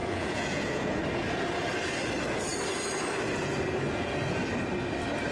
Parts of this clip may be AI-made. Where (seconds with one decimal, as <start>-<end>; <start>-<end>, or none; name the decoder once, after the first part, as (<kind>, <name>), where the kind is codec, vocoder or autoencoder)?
0.0-1.0 (vocoder, Vocos)